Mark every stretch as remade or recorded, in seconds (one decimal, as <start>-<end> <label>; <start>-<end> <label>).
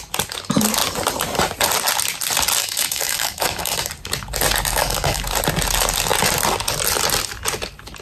0.0-2.6 recorded; 2.6-3.9 remade; 3.9-4.7 recorded; 4.7-5.2 remade; 5.2-8.0 recorded